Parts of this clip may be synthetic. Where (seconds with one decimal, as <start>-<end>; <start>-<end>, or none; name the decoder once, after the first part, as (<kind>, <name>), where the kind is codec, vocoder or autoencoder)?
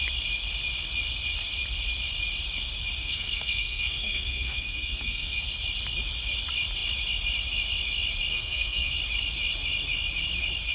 3.0-5.5 (codec, SNAC); 8.3-8.9